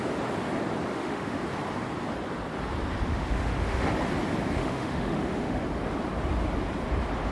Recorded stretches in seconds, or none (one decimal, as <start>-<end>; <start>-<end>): 0.0-0.9; 1.4-3.1; 3.9-4.6; 5.6-7.3